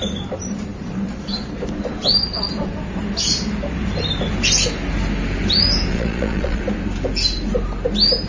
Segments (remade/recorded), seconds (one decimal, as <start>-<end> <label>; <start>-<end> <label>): 0.0-5.9 recorded; 5.9-6.6 remade; 6.6-8.3 recorded

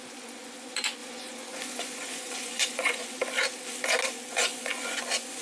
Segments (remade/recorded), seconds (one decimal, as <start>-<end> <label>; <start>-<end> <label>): 0.0-3.2 remade; 3.2-4.3 recorded; 4.3-5.4 remade